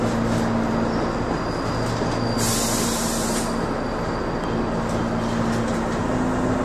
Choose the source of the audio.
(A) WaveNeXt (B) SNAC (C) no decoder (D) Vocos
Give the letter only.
C